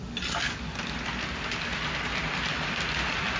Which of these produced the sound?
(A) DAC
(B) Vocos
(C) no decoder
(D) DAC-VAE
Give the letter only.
C